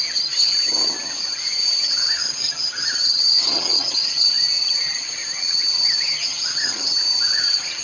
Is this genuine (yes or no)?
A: no